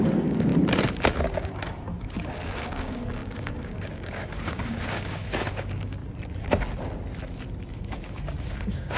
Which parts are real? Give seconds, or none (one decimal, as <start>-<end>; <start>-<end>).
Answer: 0.5-1.2; 6.0-7.8